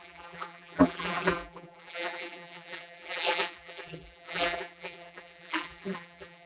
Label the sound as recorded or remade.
remade